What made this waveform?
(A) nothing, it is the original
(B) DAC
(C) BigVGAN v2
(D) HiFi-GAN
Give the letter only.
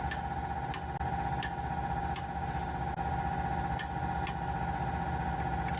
A